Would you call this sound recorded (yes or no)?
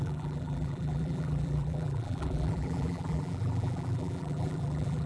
no